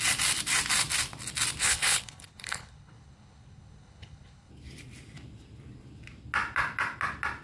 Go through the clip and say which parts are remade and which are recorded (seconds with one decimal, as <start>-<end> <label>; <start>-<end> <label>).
0.0-1.6 recorded; 1.6-4.5 remade; 4.5-7.4 recorded